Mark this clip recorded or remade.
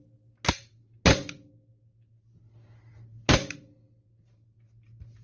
recorded